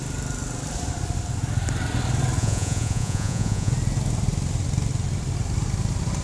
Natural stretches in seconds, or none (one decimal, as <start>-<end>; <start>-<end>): 0.0-2.4; 3.7-6.2